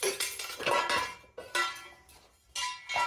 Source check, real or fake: real